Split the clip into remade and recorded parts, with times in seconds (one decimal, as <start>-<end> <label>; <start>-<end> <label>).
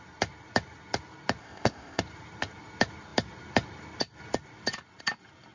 0.0-1.4 recorded; 1.4-2.0 remade; 2.0-5.5 recorded